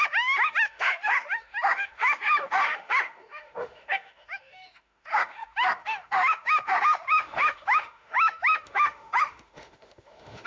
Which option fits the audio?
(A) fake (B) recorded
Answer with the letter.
A